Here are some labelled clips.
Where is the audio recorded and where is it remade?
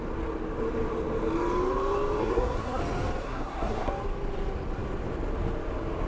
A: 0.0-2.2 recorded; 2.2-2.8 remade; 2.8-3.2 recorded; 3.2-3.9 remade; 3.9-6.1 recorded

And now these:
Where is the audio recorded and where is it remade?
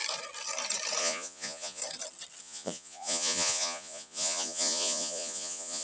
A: 0.0-1.0 recorded; 1.0-1.8 remade; 1.8-2.4 recorded; 2.4-5.8 remade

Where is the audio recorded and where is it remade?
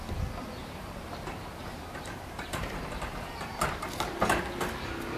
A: 0.0-0.6 recorded; 0.6-3.6 remade; 3.6-5.2 recorded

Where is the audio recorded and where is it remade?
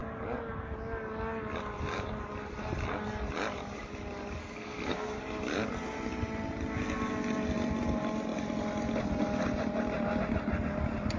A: 0.0-4.4 recorded; 4.4-5.2 remade; 5.2-11.2 recorded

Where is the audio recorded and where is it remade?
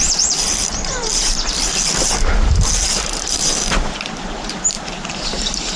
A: 0.0-5.8 remade